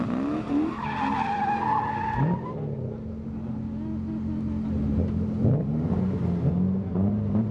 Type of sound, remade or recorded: recorded